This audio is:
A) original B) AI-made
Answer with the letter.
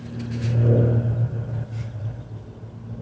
A